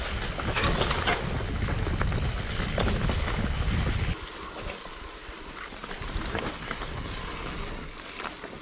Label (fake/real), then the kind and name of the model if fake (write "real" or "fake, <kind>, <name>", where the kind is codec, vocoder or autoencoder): real